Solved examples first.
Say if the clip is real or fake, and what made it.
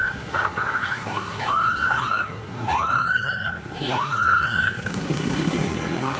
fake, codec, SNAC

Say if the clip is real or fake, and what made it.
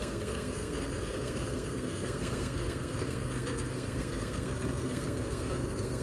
fake, codec, SNAC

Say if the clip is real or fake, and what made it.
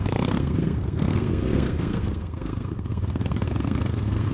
fake, codec, SNAC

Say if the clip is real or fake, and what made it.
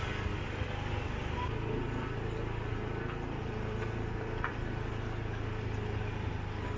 real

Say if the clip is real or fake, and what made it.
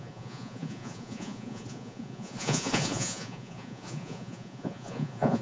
fake, vocoder, Vocos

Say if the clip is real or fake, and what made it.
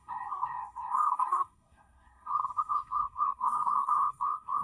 fake, codec, SNAC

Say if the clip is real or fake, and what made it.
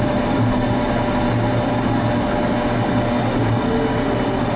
real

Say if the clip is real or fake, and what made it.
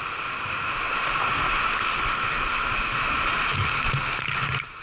real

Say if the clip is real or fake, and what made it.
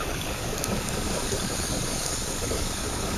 fake, codec, DAC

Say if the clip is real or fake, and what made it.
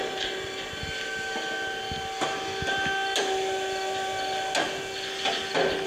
real